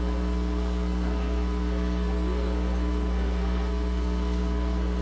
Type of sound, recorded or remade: remade